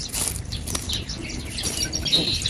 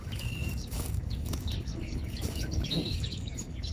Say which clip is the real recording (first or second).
first